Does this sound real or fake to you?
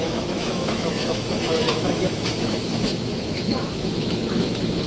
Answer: fake